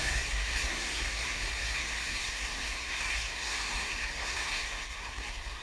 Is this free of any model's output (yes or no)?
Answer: no